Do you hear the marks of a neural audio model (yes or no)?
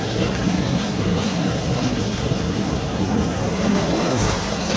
yes